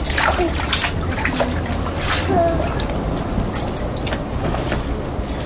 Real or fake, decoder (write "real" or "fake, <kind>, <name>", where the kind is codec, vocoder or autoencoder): real